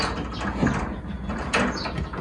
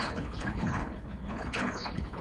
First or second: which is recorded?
first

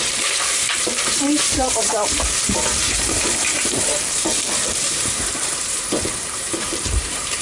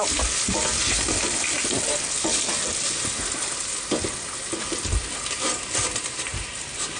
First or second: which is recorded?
second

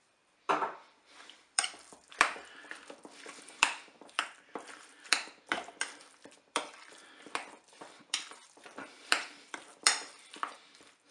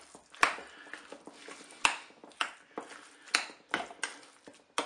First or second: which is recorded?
second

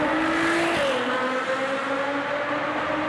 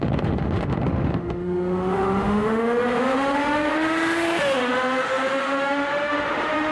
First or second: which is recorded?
first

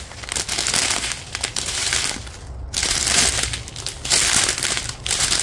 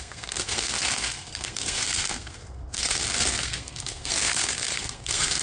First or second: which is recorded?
first